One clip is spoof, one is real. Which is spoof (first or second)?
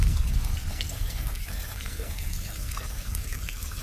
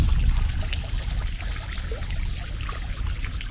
first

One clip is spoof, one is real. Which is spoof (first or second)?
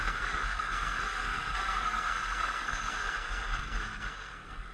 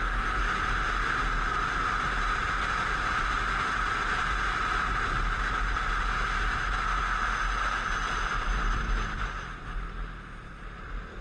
first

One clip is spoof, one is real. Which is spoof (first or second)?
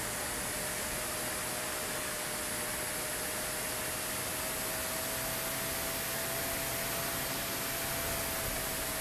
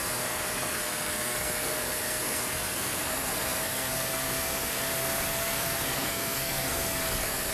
second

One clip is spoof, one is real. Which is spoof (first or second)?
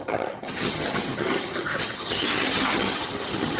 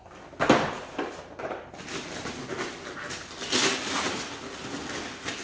first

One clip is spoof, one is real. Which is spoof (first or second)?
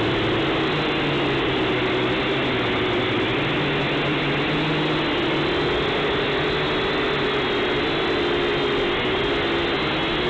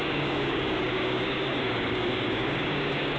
second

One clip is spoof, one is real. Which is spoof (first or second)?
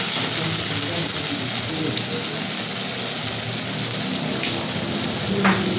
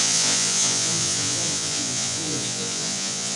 second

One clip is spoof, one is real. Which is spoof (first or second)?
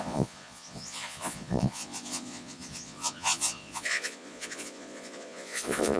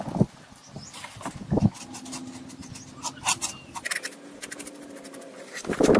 first